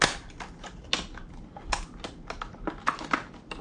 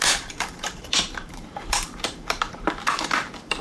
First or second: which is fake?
second